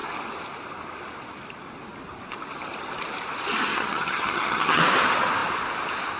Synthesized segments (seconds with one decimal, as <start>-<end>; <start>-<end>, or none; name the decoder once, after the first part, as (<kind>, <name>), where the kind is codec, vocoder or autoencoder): 3.7-4.8 (vocoder, HiFi-GAN)